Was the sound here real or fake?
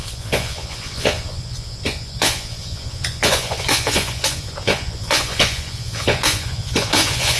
fake